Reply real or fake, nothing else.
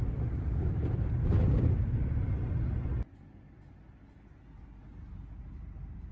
real